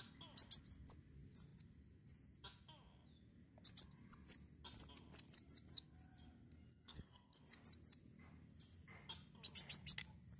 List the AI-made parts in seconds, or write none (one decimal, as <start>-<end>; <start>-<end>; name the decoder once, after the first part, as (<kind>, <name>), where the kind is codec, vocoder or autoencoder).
6.7-7.4 (codec, SNAC)